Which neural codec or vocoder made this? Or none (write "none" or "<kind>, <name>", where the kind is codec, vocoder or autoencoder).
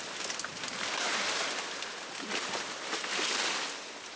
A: none